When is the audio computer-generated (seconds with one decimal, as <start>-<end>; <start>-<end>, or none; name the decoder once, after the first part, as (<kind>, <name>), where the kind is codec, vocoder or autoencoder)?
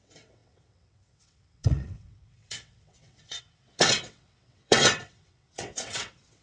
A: 0.0-6.4 (vocoder, WaveNeXt)